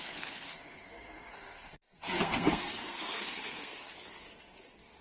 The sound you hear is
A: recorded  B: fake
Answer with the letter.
B